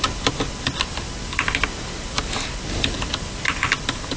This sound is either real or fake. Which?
real